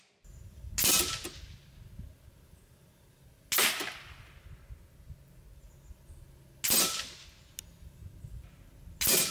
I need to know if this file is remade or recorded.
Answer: recorded